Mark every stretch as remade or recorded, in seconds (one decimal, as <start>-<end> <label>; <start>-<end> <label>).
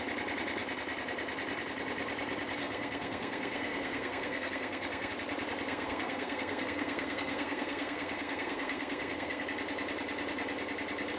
0.0-2.6 recorded; 2.6-5.1 remade; 5.1-5.7 recorded; 5.7-9.4 remade; 9.4-11.2 recorded